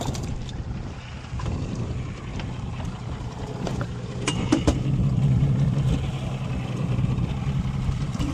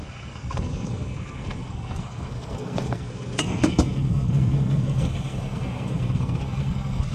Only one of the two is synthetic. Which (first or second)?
second